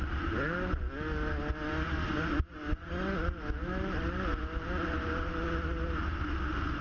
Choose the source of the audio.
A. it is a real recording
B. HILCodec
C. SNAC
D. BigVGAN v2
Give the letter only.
A